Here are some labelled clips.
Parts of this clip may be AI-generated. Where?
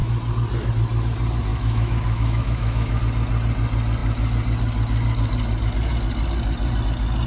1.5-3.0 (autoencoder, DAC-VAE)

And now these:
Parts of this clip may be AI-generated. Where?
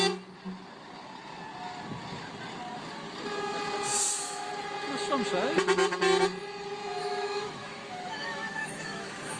3.9-4.5 (autoencoder, DAC-VAE); 7.0-9.4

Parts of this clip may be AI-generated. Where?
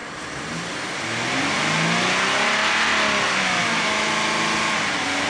3.6-4.1 (autoencoder, DAC-VAE)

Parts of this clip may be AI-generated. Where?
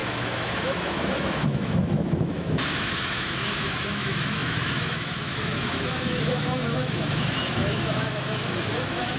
0.0-9.2 (autoencoder, DAC-VAE)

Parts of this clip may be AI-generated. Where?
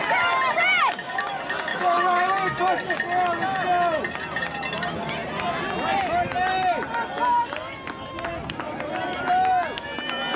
1.7-2.3 (autoencoder, DAC-VAE)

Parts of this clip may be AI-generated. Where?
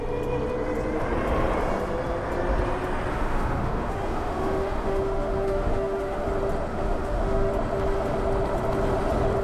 3.1-6.3 (autoencoder, DAC-VAE); 6.7-7.5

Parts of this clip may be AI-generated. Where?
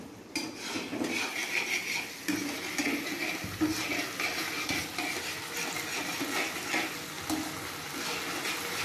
none